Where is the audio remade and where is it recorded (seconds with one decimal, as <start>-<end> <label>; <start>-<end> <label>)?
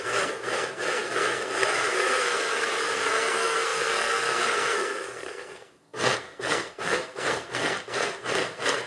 0.0-8.9 remade